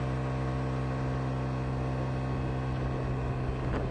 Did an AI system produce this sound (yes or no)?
no